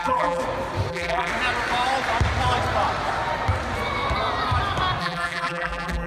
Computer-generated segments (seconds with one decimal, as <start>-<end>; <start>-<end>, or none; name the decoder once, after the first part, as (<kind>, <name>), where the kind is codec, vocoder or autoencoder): 0.0-0.4 (vocoder, BigVGAN v2); 0.9-1.3; 5.0-6.1

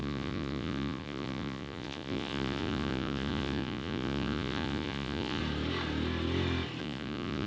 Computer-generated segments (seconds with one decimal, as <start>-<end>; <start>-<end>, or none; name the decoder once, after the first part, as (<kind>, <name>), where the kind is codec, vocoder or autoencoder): 0.0-5.4 (vocoder, Vocos); 6.8-7.5

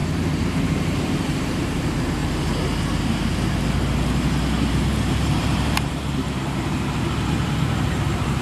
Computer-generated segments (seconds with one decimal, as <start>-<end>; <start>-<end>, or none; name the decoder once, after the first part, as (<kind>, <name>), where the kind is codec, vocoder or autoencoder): 0.0-2.2 (vocoder, BigVGAN v2); 4.7-8.4

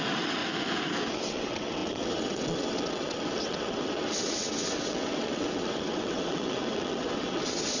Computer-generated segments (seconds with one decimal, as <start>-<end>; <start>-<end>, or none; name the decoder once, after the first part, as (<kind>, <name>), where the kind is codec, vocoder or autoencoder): 0.0-0.4 (vocoder, WaveNeXt); 1.1-7.8

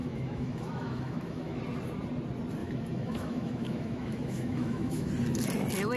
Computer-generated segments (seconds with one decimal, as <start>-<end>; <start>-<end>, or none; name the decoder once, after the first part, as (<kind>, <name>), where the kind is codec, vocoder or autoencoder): 0.0-1.6 (autoencoder, DAC-VAE); 2.6-5.1

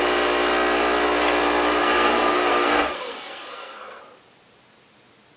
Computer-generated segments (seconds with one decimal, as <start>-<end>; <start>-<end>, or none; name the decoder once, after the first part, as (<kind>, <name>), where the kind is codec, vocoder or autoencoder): 1.8-4.0 (codec, SNAC)